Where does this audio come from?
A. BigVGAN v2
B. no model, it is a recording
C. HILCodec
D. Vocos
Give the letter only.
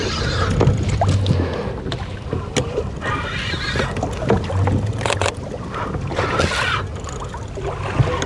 B